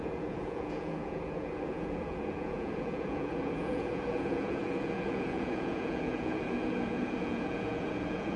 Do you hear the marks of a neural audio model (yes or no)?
yes